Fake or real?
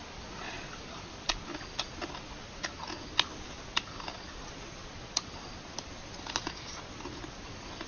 real